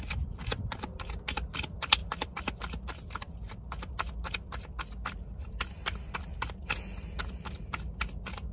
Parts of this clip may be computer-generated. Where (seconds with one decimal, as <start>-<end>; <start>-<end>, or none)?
none